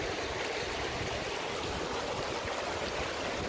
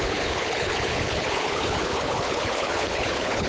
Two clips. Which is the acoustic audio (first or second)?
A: first